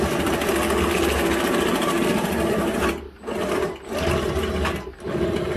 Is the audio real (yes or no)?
yes